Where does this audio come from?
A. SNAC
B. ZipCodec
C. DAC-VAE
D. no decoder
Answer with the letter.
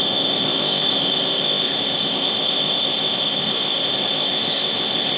B